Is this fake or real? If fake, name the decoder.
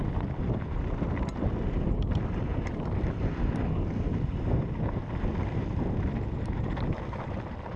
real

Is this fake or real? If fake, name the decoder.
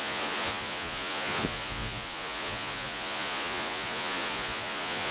fake, vocoder, Vocos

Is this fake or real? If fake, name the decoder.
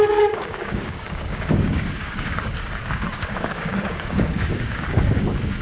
fake, codec, DAC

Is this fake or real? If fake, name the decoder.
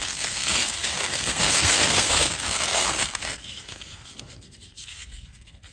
fake, codec, SNAC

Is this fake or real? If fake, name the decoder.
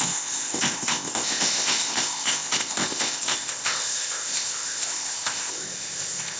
fake, codec, ZipCodec